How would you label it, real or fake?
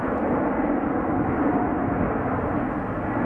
real